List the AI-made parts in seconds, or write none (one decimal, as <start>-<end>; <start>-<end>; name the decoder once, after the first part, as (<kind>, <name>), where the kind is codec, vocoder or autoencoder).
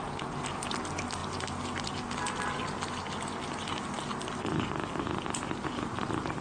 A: none